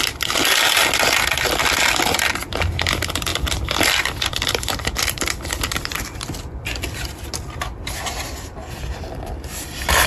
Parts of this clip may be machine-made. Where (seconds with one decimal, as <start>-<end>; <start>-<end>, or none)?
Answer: 3.3-6.4